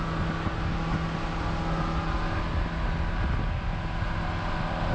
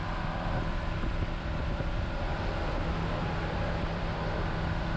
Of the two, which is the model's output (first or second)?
second